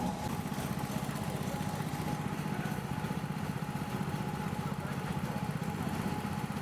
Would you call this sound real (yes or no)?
yes